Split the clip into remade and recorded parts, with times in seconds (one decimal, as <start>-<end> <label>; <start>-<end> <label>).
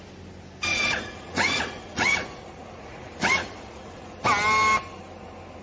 0.0-0.7 recorded; 0.7-4.1 remade; 4.1-5.6 recorded